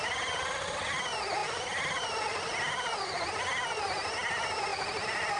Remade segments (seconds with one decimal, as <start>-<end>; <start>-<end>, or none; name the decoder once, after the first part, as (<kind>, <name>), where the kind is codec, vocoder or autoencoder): 1.4-3.3 (vocoder, BigVGAN v2); 4.7-5.4